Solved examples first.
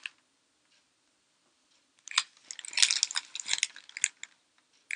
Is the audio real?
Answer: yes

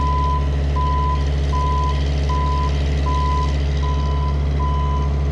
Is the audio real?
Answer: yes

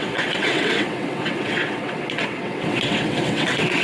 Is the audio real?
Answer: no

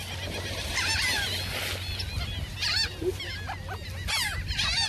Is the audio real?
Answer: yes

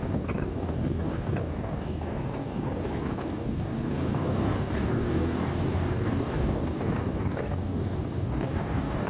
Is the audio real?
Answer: no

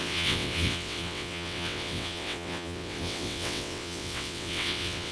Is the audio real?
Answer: no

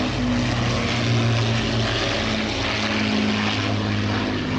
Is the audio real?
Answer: yes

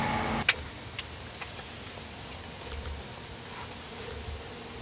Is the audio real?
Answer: yes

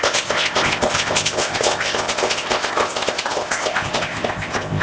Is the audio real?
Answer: no